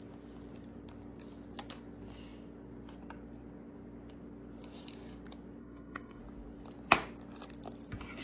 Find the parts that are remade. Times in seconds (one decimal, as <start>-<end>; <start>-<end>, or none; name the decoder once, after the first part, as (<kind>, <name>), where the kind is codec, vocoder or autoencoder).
5.6-6.2 (codec, SNAC)